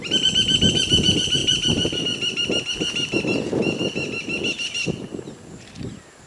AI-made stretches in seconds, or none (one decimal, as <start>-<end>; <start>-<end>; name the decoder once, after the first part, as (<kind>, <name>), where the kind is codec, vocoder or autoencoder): none